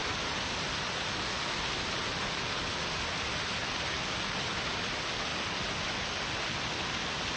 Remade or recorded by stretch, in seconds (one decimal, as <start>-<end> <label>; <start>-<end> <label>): 0.0-7.4 recorded

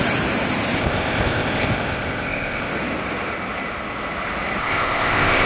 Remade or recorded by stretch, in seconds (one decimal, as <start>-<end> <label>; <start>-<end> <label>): 0.0-0.8 recorded; 0.8-2.7 remade; 2.7-4.6 recorded; 4.6-5.5 remade

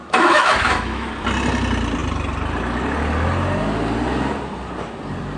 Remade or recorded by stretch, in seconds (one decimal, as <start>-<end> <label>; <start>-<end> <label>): 0.0-1.1 remade; 1.1-5.4 recorded

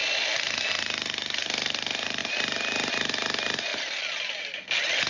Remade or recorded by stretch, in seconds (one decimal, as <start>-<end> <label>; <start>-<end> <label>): 0.0-5.1 recorded

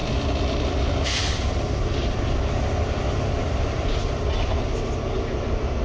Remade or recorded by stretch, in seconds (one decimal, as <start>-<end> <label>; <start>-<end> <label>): 0.0-2.2 remade; 2.2-5.8 recorded

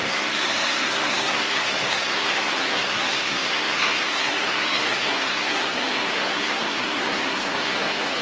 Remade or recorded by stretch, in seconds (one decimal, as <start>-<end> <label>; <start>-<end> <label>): 0.0-8.2 remade